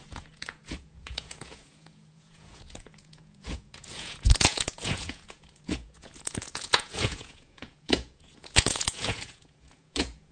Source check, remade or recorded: remade